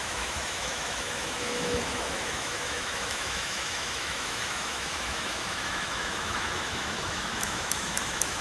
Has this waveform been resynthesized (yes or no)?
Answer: yes